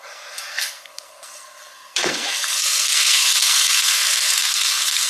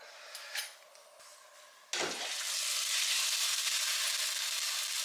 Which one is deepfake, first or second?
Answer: first